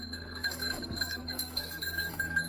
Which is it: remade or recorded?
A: remade